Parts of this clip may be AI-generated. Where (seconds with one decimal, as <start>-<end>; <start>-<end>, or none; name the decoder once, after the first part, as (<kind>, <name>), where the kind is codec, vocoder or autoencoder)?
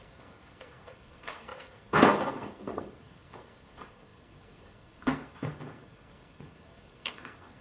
0.0-7.6 (codec, SNAC)